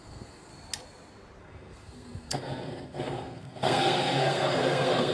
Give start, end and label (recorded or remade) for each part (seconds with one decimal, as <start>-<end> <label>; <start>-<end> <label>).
0.0-0.5 remade; 0.5-1.4 recorded; 1.4-5.1 remade